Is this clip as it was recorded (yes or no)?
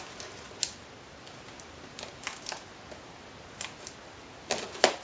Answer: yes